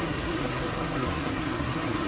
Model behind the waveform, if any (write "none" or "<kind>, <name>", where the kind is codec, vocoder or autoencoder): codec, SNAC